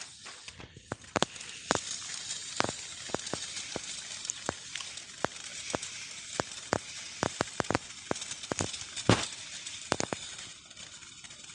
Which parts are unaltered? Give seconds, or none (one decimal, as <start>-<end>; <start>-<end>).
0.0-2.4; 3.1-5.5; 6.2-11.5